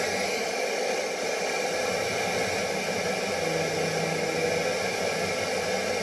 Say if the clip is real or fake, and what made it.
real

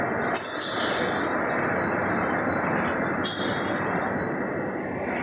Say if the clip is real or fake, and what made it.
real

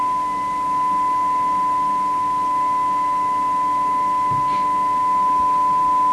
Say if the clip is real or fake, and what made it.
real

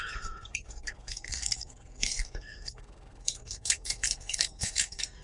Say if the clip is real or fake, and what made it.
fake, codec, SNAC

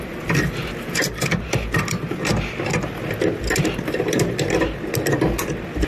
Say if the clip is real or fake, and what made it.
real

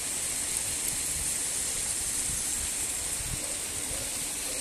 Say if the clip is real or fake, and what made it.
real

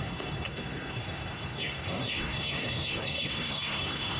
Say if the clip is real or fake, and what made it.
fake, codec, SNAC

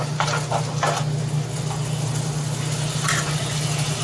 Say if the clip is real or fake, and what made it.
real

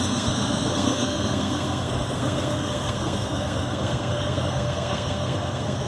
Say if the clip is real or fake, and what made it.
fake, codec, SNAC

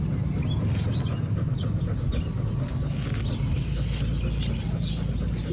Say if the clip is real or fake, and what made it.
real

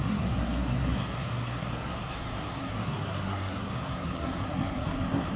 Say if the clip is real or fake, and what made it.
fake, codec, SNAC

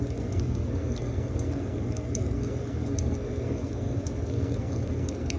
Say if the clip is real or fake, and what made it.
fake, codec, SNAC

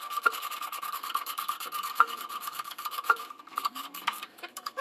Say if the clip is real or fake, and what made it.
fake, codec, SNAC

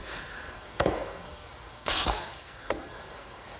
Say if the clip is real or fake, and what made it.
fake, codec, SNAC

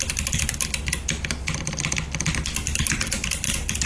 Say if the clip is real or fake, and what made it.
real